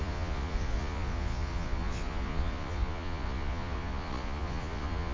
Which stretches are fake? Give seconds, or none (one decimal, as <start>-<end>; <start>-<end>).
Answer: 0.0-5.1